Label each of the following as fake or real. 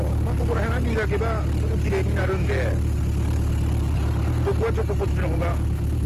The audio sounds real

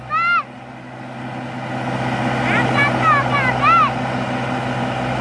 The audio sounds real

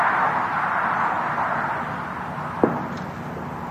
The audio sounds real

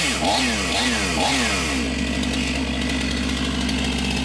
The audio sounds real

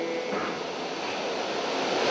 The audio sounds real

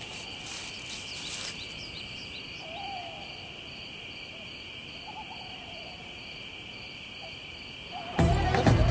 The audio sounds real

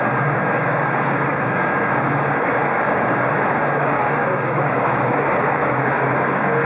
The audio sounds fake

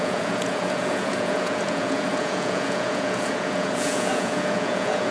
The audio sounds fake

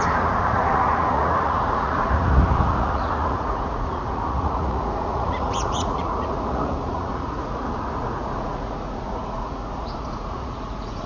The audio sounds fake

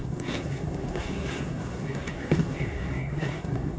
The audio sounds fake